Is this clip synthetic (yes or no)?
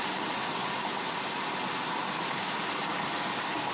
no